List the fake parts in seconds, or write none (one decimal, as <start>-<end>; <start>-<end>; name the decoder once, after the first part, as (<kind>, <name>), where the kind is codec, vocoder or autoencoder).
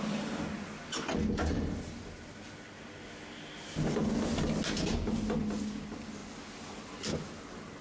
none